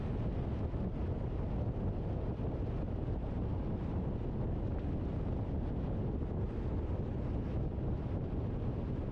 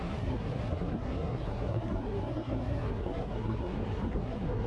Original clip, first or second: first